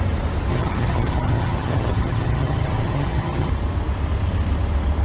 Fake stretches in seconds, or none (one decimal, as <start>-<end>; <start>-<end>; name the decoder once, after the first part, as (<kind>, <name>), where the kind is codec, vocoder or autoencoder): 0.5-3.5 (vocoder, HiFi-GAN)